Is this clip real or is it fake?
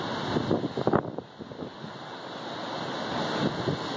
real